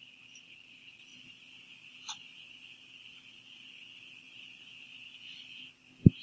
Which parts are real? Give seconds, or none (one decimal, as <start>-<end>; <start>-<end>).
0.0-1.1; 2.4-6.2